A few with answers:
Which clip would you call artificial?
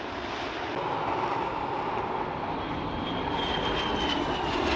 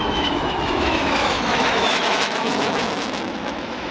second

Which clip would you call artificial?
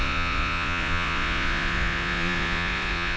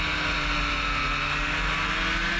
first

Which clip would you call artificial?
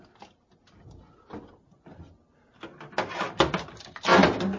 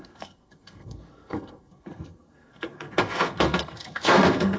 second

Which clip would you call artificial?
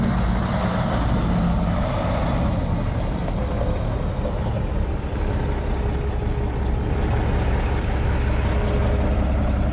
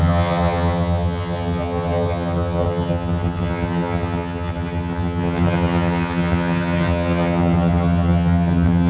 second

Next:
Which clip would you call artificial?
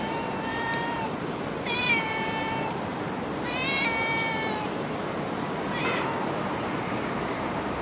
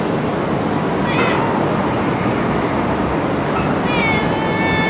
first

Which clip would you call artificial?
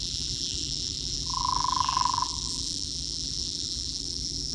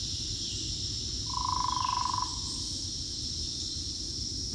first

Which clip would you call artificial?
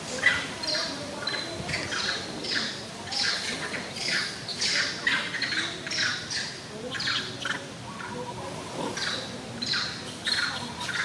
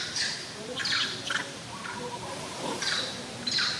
second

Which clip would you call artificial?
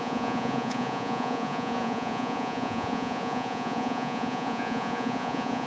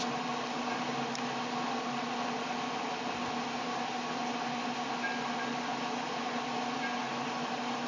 first